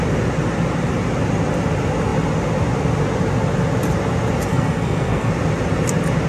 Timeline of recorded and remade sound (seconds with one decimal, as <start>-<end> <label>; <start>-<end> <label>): 0.0-4.5 recorded; 4.5-5.3 remade; 5.3-6.3 recorded